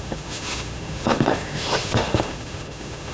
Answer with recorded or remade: remade